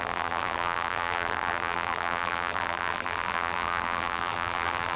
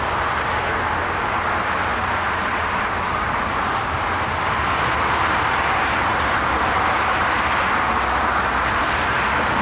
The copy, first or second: first